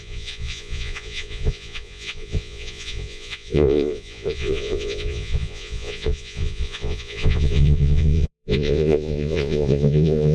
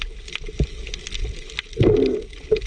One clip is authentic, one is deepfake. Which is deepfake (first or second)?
first